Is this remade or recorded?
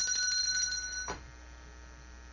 recorded